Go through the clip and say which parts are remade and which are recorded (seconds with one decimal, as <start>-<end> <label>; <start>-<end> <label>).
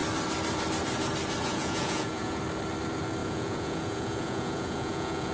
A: 0.0-1.5 recorded; 1.5-2.4 remade; 2.4-3.2 recorded; 3.2-5.3 remade